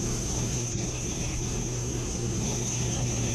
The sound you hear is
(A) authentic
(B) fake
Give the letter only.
B